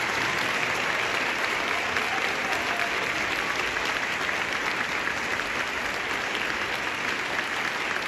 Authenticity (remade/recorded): recorded